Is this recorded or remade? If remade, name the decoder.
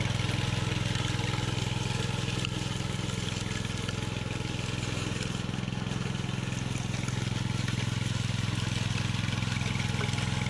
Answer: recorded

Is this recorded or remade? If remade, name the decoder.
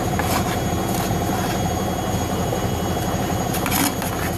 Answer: recorded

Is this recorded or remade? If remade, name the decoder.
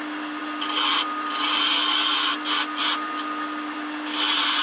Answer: recorded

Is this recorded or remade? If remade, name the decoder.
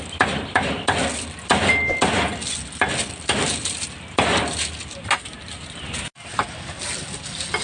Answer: recorded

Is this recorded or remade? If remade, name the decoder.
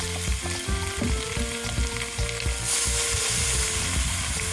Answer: recorded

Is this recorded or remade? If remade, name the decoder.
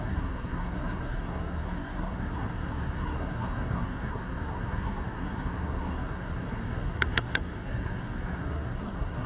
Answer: remade, codec, SNAC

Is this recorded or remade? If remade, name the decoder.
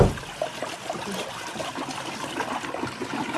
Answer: recorded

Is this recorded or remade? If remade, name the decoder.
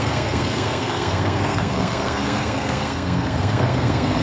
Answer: remade, codec, SNAC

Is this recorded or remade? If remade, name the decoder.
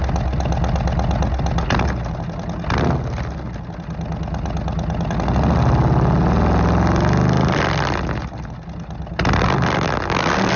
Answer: recorded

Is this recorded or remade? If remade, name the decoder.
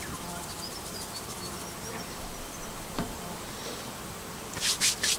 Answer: recorded